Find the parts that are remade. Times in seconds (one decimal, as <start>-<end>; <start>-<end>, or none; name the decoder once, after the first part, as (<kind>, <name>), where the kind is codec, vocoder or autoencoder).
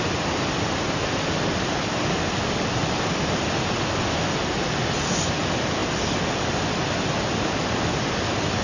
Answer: none